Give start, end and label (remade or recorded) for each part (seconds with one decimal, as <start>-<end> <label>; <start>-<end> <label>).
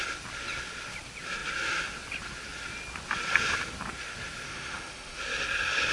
0.0-4.5 recorded; 4.5-5.2 remade; 5.2-5.9 recorded